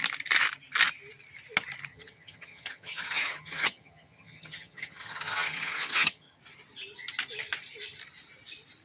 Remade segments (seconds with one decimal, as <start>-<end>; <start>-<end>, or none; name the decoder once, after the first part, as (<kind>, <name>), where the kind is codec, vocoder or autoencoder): 1.9-6.4 (vocoder, HiFi-GAN)

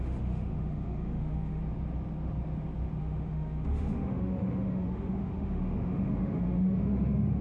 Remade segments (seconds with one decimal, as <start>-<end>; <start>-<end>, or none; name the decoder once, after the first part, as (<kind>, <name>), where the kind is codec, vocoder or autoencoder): 0.0-1.6 (autoencoder, DAC-VAE); 3.0-7.4

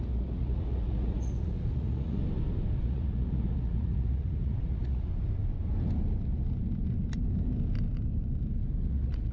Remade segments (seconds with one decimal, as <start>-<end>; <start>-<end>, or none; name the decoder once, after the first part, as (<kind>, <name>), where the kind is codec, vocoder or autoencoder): 0.0-2.2 (vocoder, Vocos); 2.8-5.1; 8.9-9.3

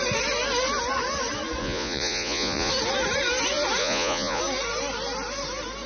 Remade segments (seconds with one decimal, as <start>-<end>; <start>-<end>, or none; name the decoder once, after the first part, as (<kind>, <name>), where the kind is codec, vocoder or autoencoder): 1.6-2.7 (vocoder, Vocos); 3.8-4.4

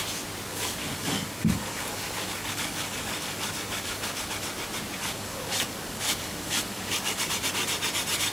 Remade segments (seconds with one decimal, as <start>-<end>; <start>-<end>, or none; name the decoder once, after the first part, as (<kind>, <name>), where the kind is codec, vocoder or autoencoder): 0.5-4.3 (codec, DAC); 5.0-7.3